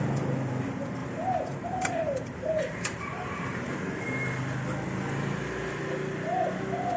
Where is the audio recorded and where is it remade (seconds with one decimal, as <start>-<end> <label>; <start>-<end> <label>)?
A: 0.0-1.0 recorded; 1.0-3.8 remade; 3.8-7.0 recorded